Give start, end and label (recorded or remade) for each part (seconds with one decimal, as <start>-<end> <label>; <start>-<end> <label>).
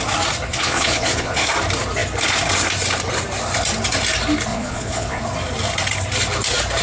0.0-0.5 recorded; 0.5-1.5 remade; 1.5-4.5 recorded; 4.5-5.2 remade; 5.2-6.8 recorded